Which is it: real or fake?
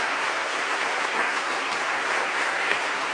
fake